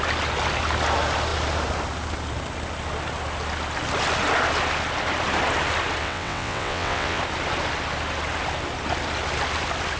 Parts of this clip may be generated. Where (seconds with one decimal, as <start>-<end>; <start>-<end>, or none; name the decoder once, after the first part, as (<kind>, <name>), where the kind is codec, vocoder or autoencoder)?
6.0-7.2 (vocoder, WaveNeXt)